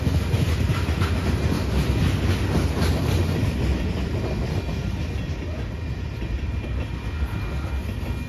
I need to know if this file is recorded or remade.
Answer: recorded